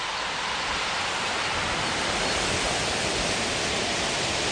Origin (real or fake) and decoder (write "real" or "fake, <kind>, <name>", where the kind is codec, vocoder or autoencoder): real